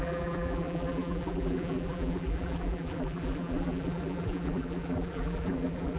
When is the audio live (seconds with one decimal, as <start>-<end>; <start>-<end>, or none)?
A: none